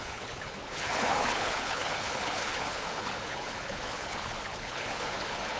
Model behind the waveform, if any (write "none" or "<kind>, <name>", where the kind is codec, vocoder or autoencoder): codec, HILCodec